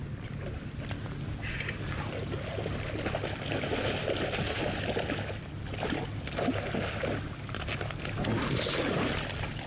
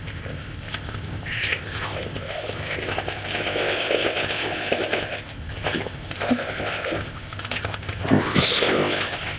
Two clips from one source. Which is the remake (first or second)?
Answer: second